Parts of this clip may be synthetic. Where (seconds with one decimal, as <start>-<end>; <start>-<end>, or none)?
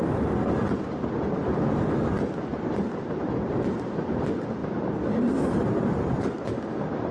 none